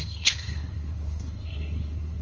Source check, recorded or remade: remade